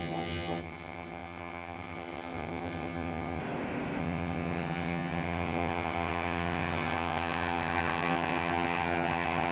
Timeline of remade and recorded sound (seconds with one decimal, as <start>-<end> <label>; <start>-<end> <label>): 0.0-3.4 remade; 3.4-4.0 recorded; 4.0-9.5 remade